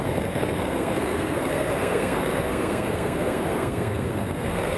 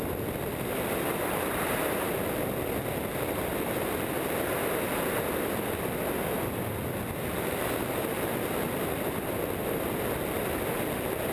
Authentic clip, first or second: second